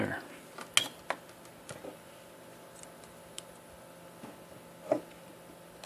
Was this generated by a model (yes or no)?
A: no